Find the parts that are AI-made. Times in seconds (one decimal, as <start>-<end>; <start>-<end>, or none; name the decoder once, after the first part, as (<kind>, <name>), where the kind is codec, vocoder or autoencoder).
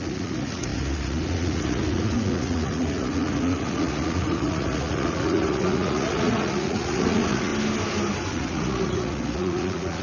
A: 0.0-7.5 (vocoder, Vocos); 8.3-10.0